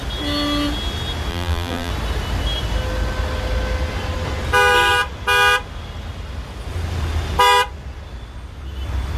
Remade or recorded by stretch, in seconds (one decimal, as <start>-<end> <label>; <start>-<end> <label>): 0.0-1.3 recorded; 1.3-1.9 remade; 1.9-9.2 recorded